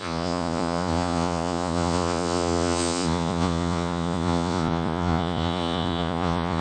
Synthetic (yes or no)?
yes